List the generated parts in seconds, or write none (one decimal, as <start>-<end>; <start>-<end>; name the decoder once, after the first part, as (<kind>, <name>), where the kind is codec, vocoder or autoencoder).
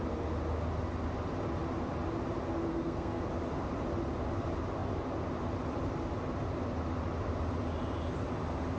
2.7-3.2 (codec, SNAC)